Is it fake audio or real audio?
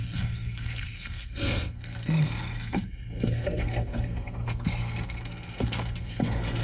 fake